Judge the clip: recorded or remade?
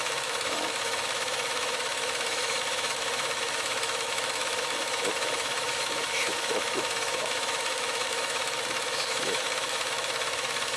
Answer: remade